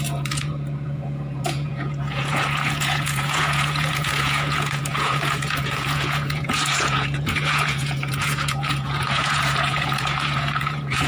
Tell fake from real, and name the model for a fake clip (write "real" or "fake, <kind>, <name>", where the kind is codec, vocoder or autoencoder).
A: fake, vocoder, Vocos